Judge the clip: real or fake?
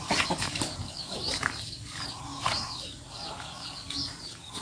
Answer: fake